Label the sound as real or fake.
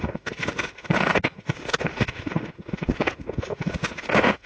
fake